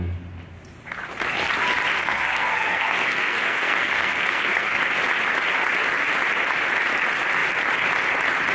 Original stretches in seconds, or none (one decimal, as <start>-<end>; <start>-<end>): 0.0-1.9; 4.8-8.5